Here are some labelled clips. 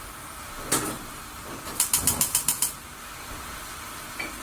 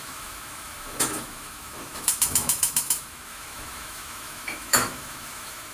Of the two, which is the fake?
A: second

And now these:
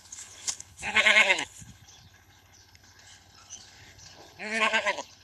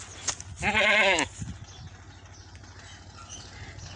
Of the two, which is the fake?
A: first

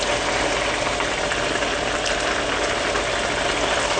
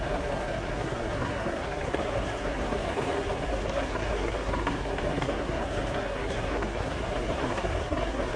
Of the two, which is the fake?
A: second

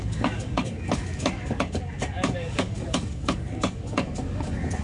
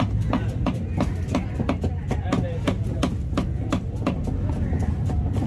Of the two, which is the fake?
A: first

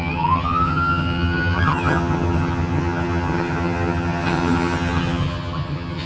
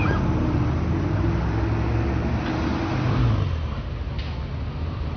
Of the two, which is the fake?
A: first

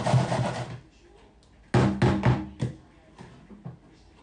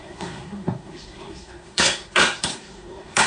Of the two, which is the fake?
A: second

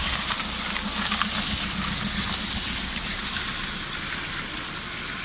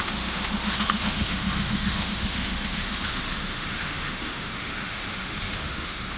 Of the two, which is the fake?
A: second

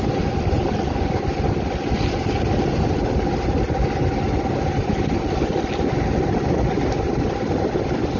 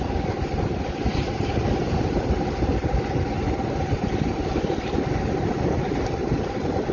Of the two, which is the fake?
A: second